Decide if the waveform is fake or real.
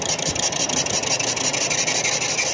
real